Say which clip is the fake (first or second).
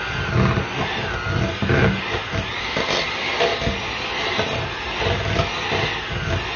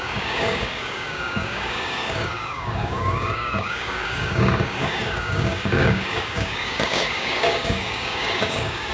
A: second